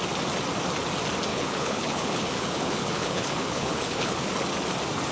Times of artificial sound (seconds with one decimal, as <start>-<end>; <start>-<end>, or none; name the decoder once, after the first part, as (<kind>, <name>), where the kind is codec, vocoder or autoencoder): 1.3-4.3 (codec, HILCodec)